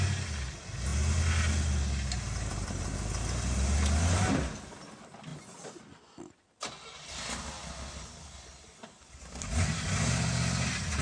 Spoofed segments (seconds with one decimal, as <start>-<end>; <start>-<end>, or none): none